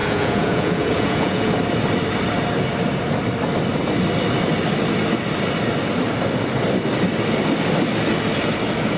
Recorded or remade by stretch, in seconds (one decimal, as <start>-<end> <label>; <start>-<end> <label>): 0.0-1.5 remade; 1.5-9.0 recorded

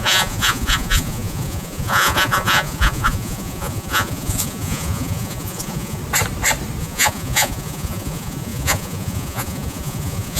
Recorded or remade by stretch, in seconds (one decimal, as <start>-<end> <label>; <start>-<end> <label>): 0.0-6.0 remade; 6.0-6.8 recorded; 6.8-10.4 remade

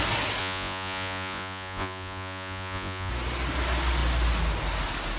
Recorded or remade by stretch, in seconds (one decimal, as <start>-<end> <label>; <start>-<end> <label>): 0.0-0.4 recorded; 0.4-3.1 remade; 3.1-5.2 recorded

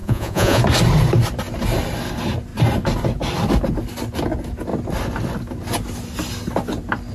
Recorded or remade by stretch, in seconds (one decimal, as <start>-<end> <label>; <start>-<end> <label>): 0.0-0.6 remade; 0.6-7.1 recorded

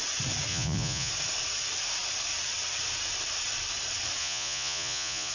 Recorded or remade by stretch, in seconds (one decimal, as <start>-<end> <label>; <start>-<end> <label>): 0.0-0.5 recorded; 0.5-1.1 remade; 1.1-4.2 recorded; 4.2-5.3 remade

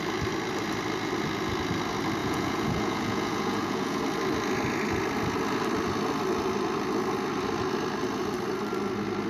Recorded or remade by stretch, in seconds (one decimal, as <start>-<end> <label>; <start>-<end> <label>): 0.0-2.2 recorded; 2.2-4.0 remade; 4.0-9.3 recorded

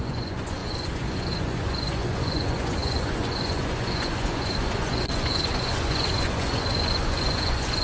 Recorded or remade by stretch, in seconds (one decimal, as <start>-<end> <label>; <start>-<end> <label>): 0.0-7.8 remade